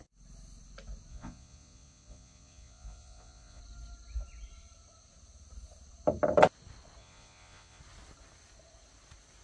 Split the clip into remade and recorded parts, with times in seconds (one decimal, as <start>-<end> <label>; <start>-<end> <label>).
0.0-1.1 recorded; 1.1-3.6 remade; 3.6-7.0 recorded; 7.0-7.8 remade; 7.8-9.4 recorded